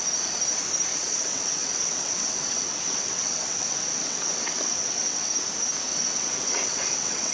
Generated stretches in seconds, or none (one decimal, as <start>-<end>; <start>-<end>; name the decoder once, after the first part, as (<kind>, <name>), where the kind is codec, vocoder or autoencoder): 0.9-5.3 (vocoder, WaveNeXt); 5.9-7.3